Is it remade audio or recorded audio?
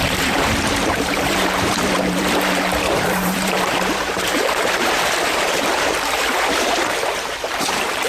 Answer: remade